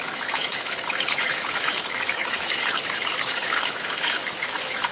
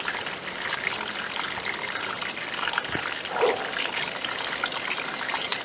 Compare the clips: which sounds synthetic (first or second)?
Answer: first